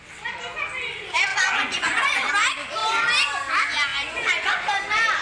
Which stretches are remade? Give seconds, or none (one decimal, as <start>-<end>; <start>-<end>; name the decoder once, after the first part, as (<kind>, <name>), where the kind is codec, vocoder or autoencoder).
1.3-2.3 (vocoder, Vocos); 3.9-4.8